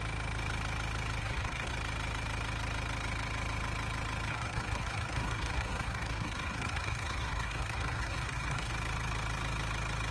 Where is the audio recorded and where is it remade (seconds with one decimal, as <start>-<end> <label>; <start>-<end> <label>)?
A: 0.0-1.2 recorded; 1.2-1.7 remade; 1.7-4.3 recorded; 4.3-8.7 remade; 8.7-10.1 recorded